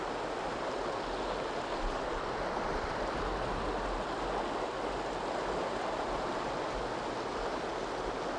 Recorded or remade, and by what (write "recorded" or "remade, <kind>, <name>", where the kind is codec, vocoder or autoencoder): recorded